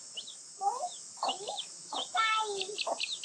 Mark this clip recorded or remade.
remade